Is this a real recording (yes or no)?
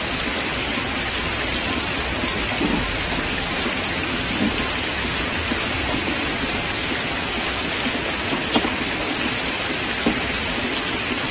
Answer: yes